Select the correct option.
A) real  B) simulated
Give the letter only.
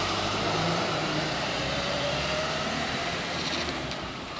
B